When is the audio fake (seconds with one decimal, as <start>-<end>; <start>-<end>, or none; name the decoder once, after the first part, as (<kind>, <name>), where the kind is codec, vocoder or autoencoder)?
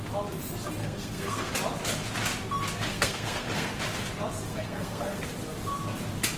0.8-1.5 (codec, SNAC); 2.9-3.8; 4.5-5.2